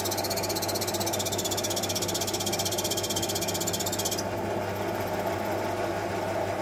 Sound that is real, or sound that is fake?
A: real